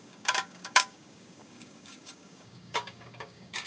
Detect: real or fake fake